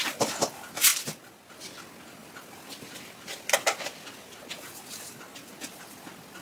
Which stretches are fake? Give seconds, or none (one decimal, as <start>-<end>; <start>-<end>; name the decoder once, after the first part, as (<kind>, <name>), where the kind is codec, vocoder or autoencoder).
none